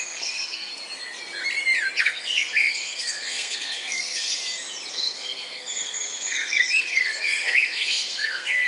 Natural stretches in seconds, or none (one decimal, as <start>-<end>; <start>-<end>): 0.7-2.0; 4.4-4.9